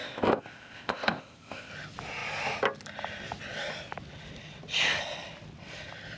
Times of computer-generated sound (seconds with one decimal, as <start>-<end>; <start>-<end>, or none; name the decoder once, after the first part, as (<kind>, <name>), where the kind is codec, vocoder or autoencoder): 0.0-1.7 (codec, ZipCodec)